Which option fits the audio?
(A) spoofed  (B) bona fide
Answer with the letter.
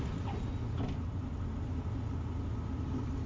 B